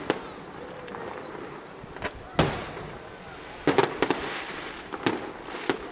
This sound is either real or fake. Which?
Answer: real